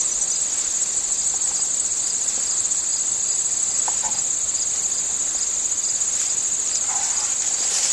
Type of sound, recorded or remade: recorded